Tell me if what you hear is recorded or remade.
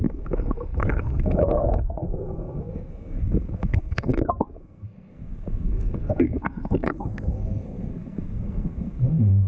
remade